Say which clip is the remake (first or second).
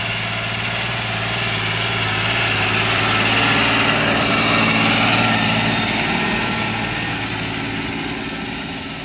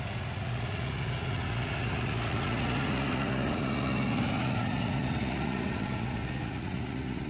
second